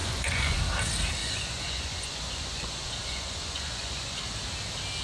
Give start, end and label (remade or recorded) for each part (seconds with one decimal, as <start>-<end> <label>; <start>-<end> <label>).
0.0-0.6 remade; 0.6-1.2 recorded; 1.2-4.2 remade; 4.2-5.0 recorded